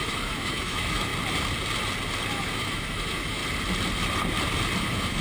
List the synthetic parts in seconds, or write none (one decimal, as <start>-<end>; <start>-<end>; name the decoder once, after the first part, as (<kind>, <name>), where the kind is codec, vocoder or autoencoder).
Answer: 0.0-1.1 (autoencoder, DAC-VAE); 2.3-3.4; 4.8-5.2